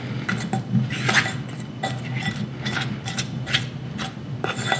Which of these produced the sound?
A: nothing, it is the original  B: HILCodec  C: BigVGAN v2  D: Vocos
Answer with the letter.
A